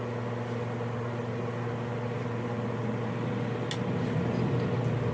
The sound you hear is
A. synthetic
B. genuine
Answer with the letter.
B